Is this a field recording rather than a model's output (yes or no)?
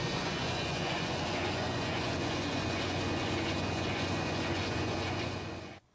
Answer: no